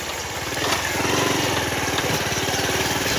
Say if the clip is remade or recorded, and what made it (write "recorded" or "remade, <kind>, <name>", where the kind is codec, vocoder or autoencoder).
remade, vocoder, BigVGAN v2